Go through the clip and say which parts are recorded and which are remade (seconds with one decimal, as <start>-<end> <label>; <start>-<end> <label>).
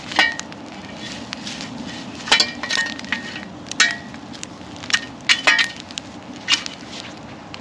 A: 0.0-7.6 recorded